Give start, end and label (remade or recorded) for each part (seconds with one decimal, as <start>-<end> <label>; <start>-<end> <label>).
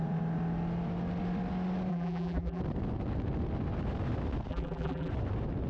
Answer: 0.0-1.9 recorded; 1.9-2.6 remade; 2.6-4.5 recorded; 4.5-5.1 remade; 5.1-5.7 recorded